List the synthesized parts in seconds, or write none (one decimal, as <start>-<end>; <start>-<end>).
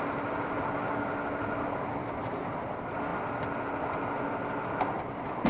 none